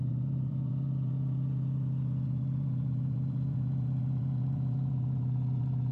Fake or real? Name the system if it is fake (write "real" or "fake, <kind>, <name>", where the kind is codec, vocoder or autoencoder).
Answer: fake, vocoder, BigVGAN v2